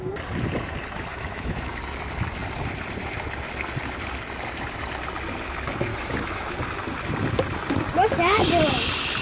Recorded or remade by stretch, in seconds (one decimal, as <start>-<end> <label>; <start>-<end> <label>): 0.0-1.1 recorded; 1.1-1.8 remade; 1.8-5.9 recorded; 5.9-6.5 remade; 6.5-9.2 recorded